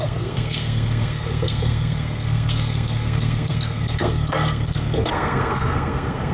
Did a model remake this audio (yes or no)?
yes